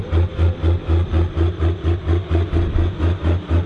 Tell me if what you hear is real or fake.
real